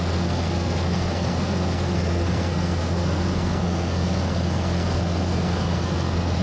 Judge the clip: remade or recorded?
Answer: remade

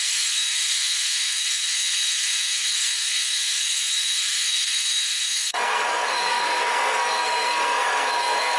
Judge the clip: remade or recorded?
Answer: remade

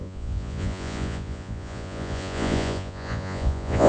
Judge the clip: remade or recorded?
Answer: remade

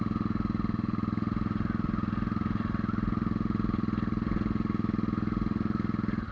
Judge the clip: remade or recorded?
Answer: recorded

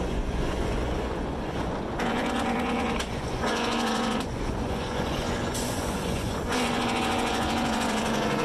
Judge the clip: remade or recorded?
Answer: remade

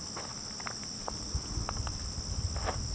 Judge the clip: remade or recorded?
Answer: recorded